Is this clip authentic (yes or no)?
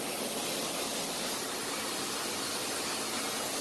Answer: yes